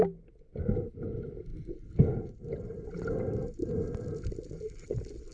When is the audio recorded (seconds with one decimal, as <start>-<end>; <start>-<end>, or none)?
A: 0.0-5.3